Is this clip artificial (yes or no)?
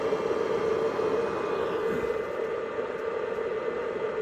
no